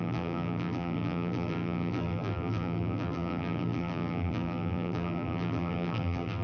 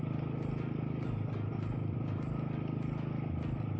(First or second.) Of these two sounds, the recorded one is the second